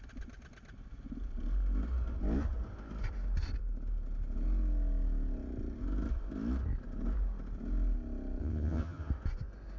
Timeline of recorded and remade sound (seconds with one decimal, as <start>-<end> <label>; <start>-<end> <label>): 0.0-8.4 recorded; 8.4-9.1 remade; 9.1-9.8 recorded